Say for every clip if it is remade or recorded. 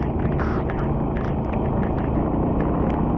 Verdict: recorded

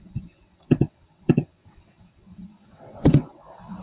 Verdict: remade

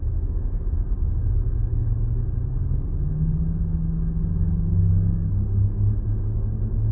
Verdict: recorded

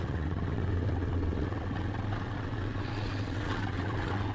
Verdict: remade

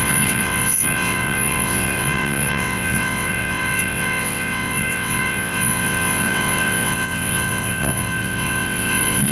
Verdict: remade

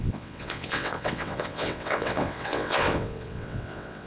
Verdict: remade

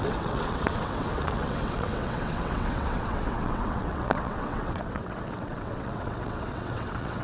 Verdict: remade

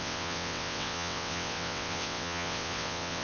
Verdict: remade